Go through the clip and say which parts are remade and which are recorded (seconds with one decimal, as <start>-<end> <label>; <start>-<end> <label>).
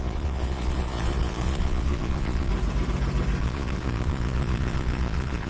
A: 0.0-2.5 remade; 2.5-3.4 recorded; 3.4-5.5 remade